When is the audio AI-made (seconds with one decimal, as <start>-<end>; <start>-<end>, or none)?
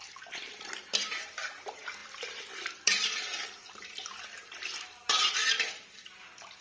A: 0.0-6.6